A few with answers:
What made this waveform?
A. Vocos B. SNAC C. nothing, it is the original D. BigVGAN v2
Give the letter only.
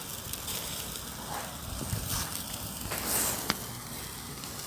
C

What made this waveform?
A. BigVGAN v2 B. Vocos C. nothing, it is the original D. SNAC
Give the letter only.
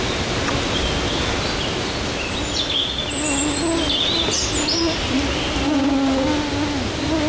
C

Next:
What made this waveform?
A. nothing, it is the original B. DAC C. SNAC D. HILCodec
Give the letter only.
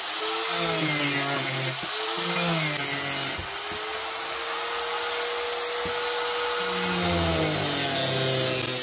A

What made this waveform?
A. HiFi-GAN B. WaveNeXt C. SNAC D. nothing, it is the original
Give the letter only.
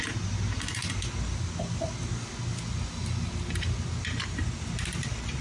D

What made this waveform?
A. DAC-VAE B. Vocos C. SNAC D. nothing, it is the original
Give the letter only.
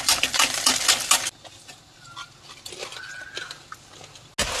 D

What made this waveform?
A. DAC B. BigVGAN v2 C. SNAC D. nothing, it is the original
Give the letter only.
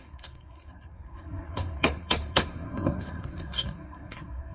C